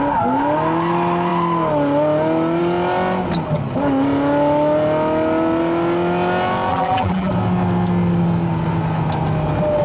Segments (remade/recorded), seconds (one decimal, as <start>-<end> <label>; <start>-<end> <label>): 0.0-6.7 recorded; 6.7-7.3 remade; 7.3-9.8 recorded